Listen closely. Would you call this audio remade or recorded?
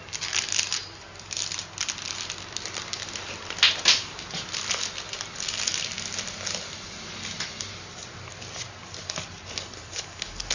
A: recorded